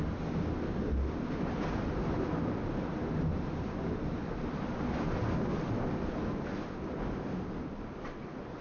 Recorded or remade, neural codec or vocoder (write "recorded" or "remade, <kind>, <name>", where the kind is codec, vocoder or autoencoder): recorded